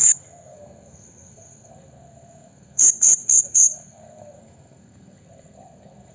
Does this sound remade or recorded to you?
remade